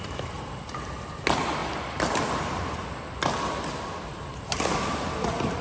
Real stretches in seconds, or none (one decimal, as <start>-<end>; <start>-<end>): 0.0-5.6